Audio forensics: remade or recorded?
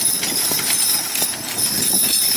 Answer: recorded